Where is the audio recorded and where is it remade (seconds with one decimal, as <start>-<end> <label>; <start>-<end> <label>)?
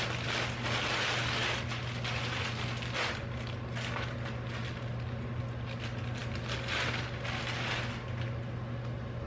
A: 0.0-9.3 recorded